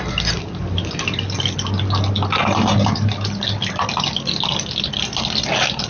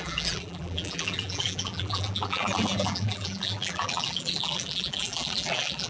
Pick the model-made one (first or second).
second